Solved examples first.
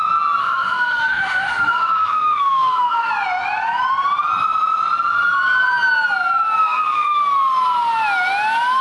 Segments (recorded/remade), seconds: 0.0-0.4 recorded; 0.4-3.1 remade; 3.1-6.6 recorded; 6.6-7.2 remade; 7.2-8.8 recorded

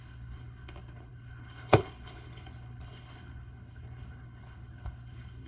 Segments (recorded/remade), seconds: 0.0-5.5 remade

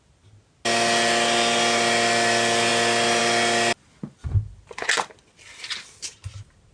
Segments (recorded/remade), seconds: 0.0-6.7 recorded

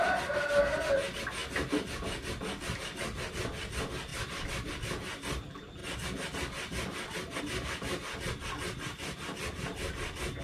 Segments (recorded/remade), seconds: 0.0-10.4 recorded